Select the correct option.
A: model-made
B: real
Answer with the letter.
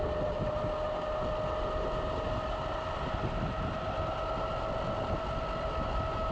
B